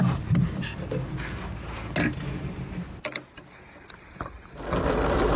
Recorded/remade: recorded